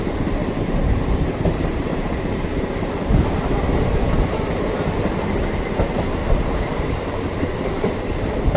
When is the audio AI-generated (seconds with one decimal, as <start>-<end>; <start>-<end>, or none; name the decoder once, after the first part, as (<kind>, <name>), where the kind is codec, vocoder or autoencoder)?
0.4-3.2 (vocoder, BigVGAN v2); 6.2-7.9

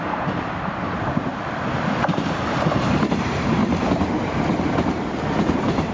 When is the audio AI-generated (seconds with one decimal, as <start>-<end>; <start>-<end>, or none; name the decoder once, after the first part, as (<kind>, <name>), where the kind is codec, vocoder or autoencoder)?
0.0-1.3 (vocoder, BigVGAN v2); 3.1-3.6; 4.2-5.9

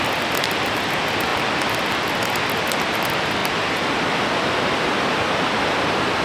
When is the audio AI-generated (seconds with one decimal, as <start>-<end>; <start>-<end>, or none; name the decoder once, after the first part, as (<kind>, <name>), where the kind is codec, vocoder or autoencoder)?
none

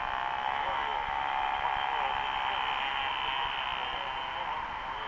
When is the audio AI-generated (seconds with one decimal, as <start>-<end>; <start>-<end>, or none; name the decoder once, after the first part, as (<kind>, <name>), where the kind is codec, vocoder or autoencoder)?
none

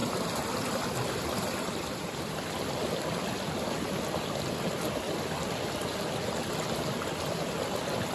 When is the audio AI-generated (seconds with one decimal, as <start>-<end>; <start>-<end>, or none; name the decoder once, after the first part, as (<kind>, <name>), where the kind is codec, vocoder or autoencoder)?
0.0-4.4 (vocoder, BigVGAN v2)

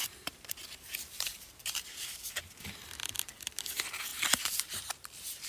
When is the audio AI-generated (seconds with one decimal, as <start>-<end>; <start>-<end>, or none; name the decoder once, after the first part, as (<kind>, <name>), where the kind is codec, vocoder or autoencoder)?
0.0-2.8 (vocoder, BigVGAN v2); 4.1-5.5